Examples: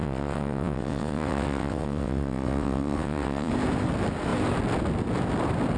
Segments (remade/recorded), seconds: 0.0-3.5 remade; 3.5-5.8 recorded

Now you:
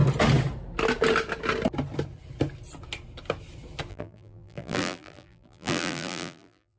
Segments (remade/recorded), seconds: 0.0-3.9 recorded; 3.9-6.8 remade

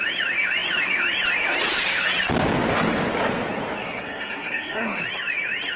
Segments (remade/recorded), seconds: 0.0-3.8 recorded; 3.8-5.0 remade; 5.0-5.8 recorded

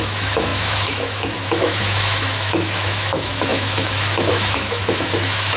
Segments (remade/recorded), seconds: 0.0-5.6 remade

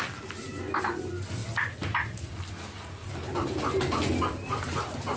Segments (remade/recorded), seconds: 0.0-5.2 recorded